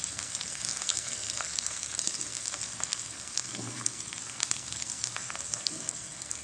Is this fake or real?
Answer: fake